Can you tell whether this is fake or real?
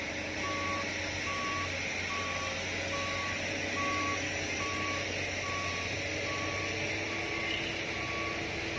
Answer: real